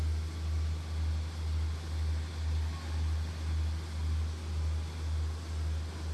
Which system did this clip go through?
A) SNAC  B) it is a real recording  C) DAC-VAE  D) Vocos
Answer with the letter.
B